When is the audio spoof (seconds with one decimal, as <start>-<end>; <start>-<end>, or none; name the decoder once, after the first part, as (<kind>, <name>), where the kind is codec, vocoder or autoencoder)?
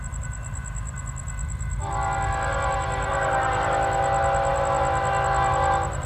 none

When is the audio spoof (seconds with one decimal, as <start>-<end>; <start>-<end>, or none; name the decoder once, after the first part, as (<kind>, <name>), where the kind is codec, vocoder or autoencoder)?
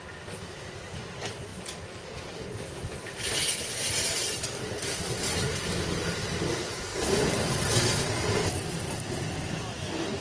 none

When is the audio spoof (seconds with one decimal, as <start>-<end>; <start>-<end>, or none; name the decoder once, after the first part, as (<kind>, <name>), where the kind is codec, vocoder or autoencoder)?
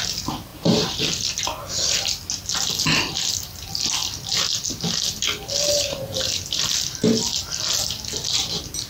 none